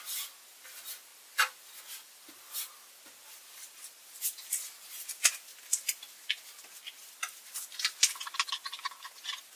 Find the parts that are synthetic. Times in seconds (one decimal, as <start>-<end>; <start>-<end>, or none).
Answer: 1.1-4.2; 5.5-6.0